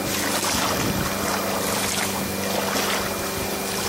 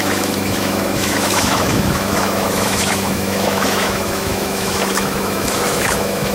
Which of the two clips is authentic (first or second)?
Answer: first